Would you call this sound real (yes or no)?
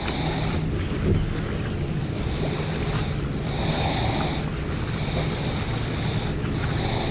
yes